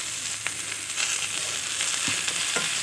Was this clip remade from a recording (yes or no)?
no